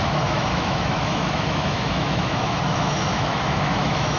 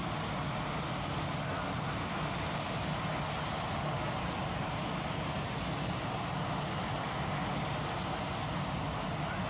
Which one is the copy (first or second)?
first